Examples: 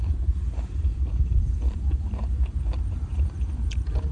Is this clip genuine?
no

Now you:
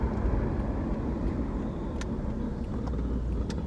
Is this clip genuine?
yes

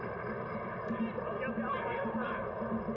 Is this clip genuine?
yes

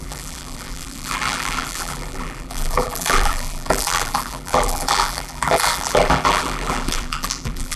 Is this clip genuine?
no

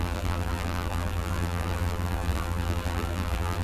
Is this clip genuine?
no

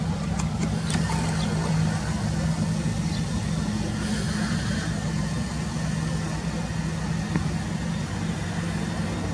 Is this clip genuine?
yes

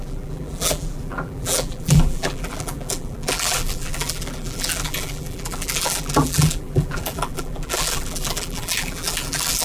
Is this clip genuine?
no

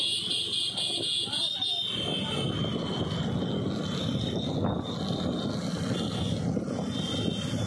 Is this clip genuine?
yes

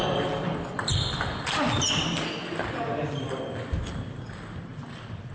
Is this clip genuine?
yes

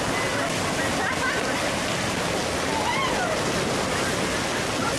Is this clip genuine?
yes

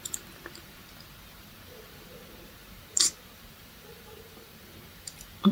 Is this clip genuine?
no